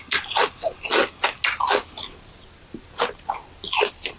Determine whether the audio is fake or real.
real